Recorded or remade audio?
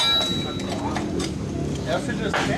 recorded